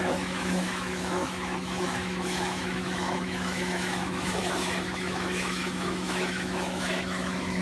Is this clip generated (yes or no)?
yes